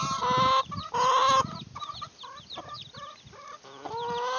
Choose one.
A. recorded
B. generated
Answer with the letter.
A